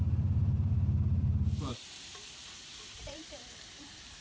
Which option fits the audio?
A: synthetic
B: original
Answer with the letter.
A